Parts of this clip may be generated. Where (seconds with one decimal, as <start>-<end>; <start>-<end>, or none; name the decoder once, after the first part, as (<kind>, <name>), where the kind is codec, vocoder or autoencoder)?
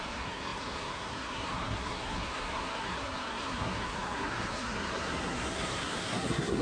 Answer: 0.0-6.6 (codec, SNAC)